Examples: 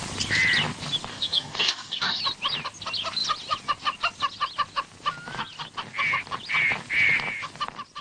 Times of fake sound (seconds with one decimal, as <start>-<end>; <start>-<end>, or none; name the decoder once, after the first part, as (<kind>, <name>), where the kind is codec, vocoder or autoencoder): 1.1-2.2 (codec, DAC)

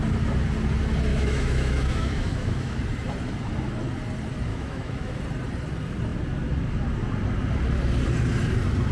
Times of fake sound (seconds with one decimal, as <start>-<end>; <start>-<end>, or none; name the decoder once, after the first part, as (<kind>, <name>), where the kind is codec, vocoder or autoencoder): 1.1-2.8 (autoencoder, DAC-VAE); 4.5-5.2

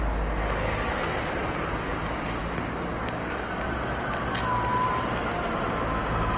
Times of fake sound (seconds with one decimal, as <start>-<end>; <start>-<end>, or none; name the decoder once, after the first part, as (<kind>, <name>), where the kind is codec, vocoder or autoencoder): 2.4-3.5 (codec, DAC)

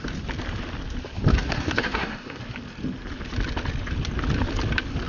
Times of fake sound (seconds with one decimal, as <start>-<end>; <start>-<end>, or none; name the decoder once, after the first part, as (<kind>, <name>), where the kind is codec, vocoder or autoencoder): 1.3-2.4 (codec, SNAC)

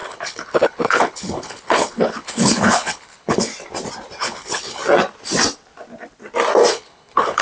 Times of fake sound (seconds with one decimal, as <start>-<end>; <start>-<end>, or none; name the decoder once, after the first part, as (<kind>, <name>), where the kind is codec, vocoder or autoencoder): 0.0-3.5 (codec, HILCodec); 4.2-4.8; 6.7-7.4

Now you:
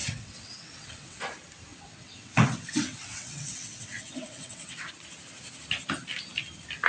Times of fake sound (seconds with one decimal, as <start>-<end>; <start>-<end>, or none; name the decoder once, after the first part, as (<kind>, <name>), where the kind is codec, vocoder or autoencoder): 0.0-1.2 (vocoder, WaveNeXt); 1.7-4.9

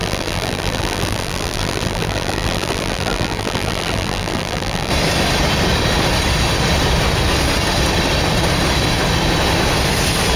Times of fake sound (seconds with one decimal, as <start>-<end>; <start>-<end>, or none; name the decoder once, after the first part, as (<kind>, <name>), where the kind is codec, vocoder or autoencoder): 0.0-4.9 (vocoder, BigVGAN v2)